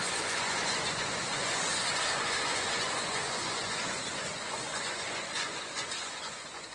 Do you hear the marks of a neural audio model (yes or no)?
yes